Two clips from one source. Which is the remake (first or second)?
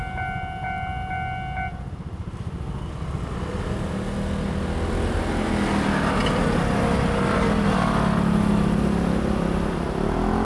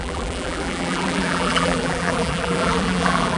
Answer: second